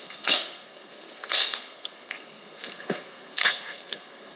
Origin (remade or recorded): remade